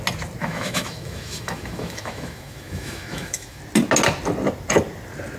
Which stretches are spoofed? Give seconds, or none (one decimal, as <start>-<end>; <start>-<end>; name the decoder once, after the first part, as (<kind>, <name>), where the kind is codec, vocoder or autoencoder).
0.4-3.6 (autoencoder, DAC-VAE)